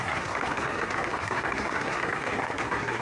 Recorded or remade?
remade